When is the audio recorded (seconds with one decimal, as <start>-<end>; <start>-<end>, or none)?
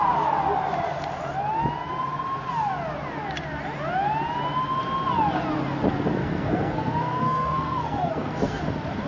0.0-6.2; 8.6-9.1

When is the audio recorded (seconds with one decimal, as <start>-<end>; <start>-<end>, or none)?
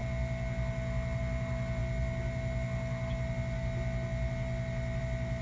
0.0-5.4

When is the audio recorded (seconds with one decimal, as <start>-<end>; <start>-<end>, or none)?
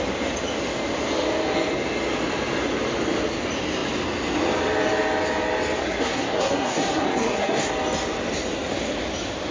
0.0-5.8; 7.7-9.5